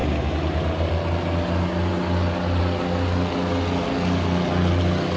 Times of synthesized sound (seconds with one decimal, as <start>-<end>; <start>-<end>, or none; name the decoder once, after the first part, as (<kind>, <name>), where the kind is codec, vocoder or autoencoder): 0.0-0.9 (vocoder, BigVGAN v2)